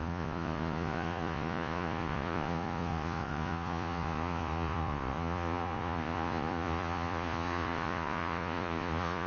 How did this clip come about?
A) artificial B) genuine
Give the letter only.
A